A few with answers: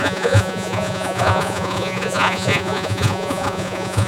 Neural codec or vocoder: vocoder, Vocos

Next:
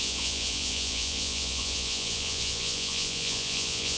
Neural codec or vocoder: vocoder, Vocos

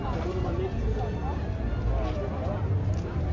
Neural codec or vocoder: none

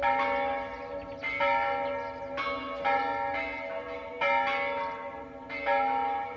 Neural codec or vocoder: none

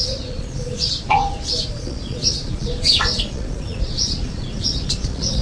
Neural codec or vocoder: vocoder, Vocos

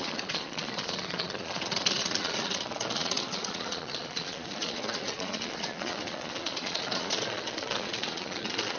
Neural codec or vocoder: vocoder, Vocos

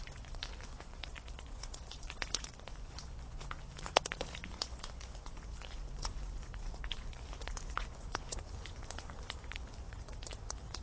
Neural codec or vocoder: vocoder, Vocos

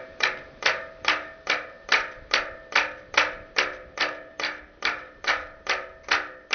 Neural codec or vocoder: none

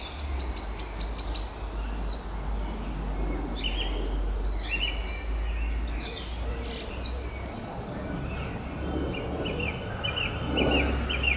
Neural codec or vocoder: none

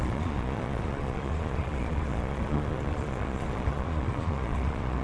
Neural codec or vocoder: vocoder, Vocos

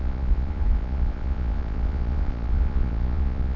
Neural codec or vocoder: vocoder, Vocos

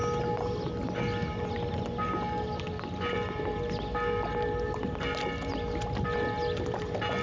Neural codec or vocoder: none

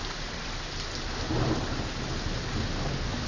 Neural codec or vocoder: none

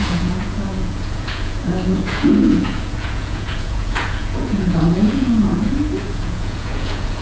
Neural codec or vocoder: vocoder, Vocos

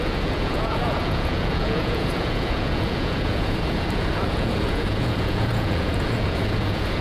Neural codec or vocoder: vocoder, Vocos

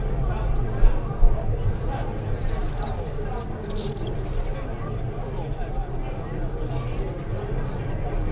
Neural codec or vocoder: none